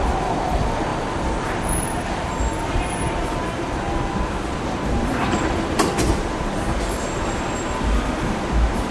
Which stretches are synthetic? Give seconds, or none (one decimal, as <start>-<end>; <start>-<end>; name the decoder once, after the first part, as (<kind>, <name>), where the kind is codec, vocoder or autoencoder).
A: 0.0-8.9 (vocoder, BigVGAN v2)